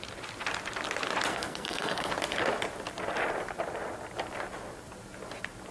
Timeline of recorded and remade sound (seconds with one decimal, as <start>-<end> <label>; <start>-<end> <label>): 0.0-1.3 recorded; 1.3-2.1 remade; 2.1-5.7 recorded